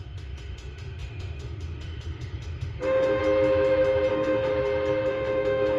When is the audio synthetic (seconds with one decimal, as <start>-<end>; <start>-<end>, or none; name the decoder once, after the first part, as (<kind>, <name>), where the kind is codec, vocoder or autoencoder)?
0.0-3.2 (autoencoder, DAC-VAE); 4.1-4.5; 5.1-5.8